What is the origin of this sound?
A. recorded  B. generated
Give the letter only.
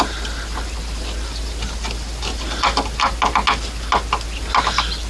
A